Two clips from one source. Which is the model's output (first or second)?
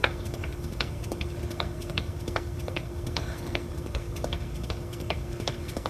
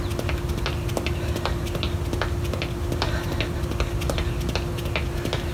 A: first